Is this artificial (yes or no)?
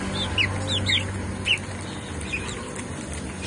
no